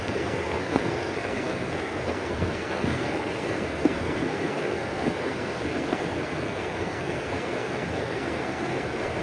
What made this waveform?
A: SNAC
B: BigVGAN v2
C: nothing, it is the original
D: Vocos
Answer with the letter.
A